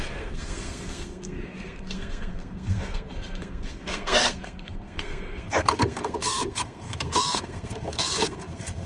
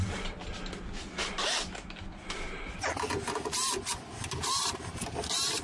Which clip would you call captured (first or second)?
second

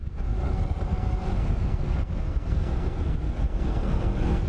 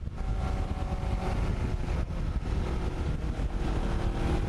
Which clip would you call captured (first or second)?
second